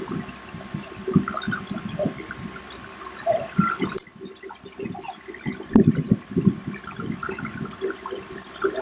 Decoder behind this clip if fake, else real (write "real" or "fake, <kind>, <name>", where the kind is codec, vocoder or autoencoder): real